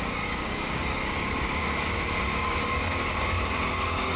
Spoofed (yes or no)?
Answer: yes